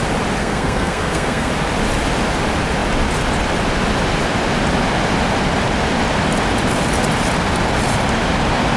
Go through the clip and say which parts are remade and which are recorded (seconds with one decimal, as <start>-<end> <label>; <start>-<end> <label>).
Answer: 0.0-0.4 recorded; 0.4-1.5 remade; 1.5-8.8 recorded